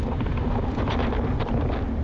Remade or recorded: recorded